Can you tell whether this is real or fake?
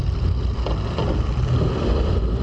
real